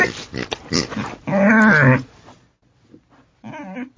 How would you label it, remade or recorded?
recorded